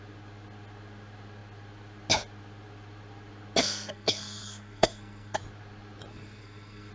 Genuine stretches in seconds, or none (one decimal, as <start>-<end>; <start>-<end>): 0.0-3.6; 5.4-6.1